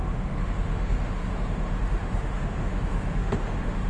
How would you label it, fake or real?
fake